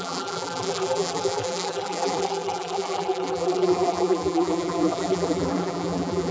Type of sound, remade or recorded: remade